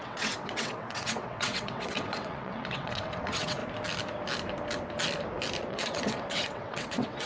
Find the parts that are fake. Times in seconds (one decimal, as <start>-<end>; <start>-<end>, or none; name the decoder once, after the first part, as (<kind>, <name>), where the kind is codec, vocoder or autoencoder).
0.0-3.6 (vocoder, WaveNeXt); 5.7-7.3